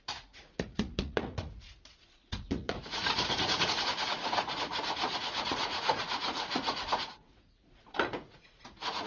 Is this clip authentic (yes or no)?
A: no